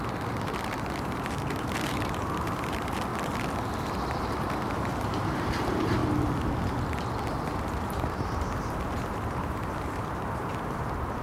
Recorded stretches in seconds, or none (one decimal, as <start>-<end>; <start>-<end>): 3.1-3.8; 6.0-7.3